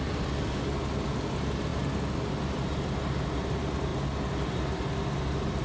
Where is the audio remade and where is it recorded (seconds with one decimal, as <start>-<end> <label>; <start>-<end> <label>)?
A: 0.0-5.6 recorded